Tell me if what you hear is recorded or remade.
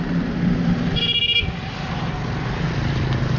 recorded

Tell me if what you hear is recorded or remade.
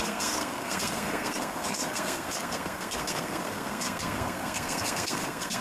remade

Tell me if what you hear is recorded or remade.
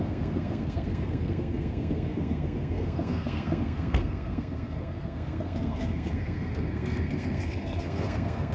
remade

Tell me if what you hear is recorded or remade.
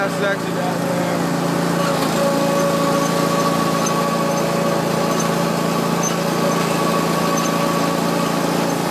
recorded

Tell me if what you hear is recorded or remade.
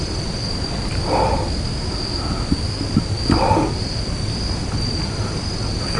recorded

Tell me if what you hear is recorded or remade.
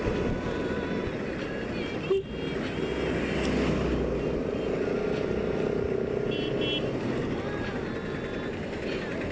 recorded